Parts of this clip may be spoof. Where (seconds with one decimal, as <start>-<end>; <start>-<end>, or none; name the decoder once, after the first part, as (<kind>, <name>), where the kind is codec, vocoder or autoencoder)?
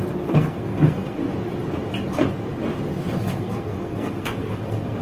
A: 0.0-1.2 (codec, SNAC); 3.2-5.0